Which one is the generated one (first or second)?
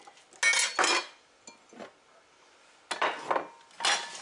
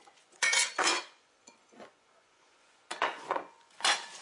second